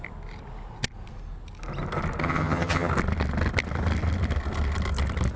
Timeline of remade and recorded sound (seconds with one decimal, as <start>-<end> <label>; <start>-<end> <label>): 0.0-2.2 recorded; 2.2-2.9 remade; 2.9-5.4 recorded